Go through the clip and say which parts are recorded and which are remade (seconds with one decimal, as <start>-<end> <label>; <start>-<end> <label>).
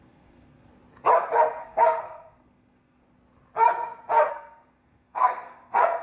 0.0-0.7 remade; 0.7-1.6 recorded; 1.6-3.0 remade; 3.0-4.3 recorded; 4.3-6.0 remade